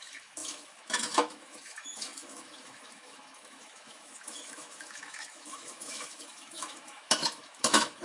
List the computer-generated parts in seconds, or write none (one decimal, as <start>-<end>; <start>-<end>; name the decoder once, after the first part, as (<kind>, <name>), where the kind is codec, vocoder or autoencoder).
0.0-8.0 (autoencoder, DAC-VAE)